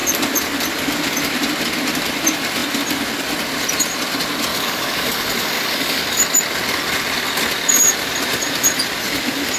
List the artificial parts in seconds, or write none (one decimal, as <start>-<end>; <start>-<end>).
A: 4.5-6.2